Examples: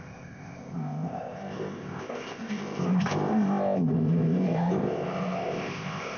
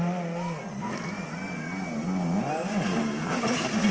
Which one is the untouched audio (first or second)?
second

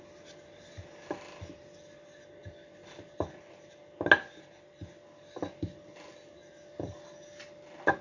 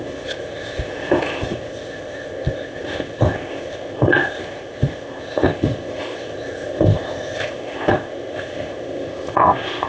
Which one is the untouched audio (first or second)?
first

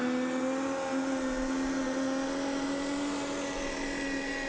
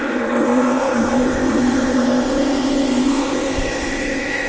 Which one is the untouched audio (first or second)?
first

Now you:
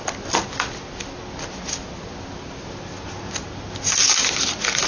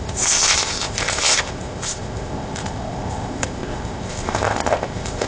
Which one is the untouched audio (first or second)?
first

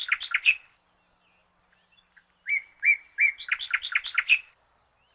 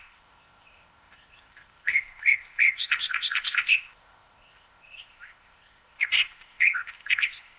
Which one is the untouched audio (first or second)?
first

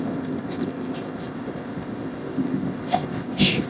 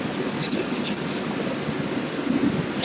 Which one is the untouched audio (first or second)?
second